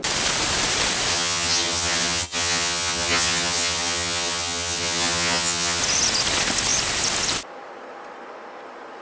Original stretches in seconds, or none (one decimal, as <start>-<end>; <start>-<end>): 0.0-1.1; 5.8-9.0